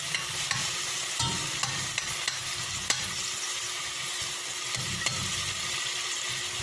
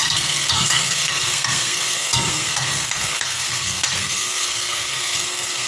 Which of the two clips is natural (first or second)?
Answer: first